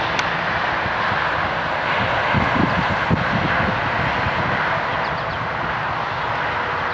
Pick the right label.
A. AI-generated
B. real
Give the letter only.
B